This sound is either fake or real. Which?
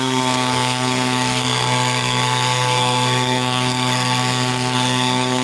fake